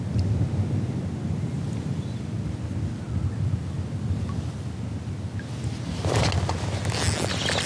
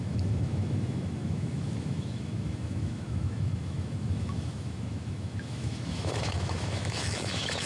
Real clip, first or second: first